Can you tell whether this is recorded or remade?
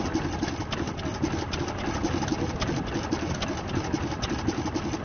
recorded